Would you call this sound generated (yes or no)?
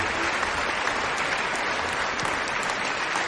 no